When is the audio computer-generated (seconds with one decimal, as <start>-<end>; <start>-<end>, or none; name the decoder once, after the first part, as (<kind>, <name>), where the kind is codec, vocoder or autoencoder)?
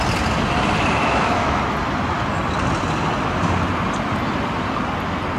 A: 1.0-1.6 (autoencoder, DAC-VAE)